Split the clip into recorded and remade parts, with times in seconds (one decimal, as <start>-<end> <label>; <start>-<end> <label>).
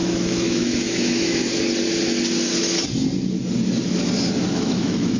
0.0-1.4 remade; 1.4-4.5 recorded; 4.5-5.2 remade